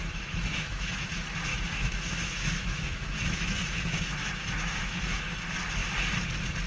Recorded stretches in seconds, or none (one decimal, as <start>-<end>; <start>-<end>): 1.1-1.5; 5.2-6.7